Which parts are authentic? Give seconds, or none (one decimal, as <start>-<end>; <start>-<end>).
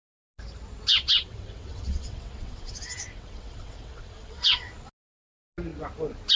0.0-0.9; 4.7-6.4